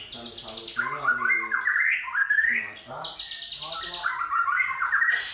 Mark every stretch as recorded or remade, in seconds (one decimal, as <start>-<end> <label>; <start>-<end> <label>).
0.0-2.2 recorded; 2.2-2.9 remade; 2.9-5.3 recorded